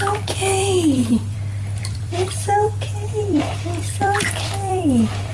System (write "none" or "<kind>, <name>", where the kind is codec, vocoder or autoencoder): vocoder, BigVGAN v2